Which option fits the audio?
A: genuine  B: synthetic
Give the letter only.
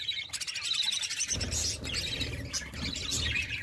A